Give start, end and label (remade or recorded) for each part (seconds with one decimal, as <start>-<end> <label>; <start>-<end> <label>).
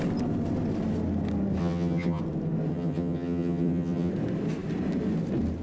0.0-1.6 recorded; 1.6-2.2 remade; 2.2-2.7 recorded; 2.7-4.1 remade; 4.1-5.6 recorded